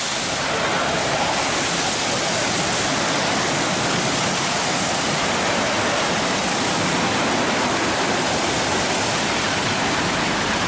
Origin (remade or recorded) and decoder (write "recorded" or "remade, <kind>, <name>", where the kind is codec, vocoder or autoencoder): recorded